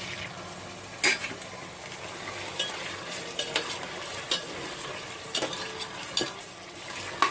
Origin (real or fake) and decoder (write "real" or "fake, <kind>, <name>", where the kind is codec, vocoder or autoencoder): real